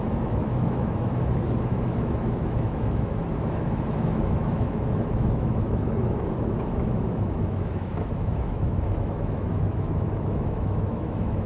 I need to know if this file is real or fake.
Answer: fake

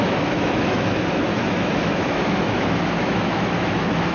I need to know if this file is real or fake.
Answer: fake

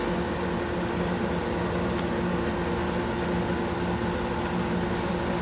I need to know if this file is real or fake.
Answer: real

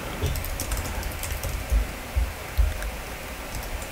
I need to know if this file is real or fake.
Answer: real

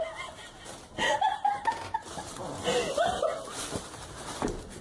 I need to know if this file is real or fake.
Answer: real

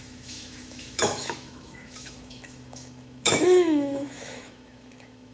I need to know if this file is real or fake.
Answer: fake